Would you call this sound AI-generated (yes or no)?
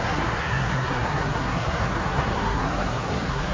yes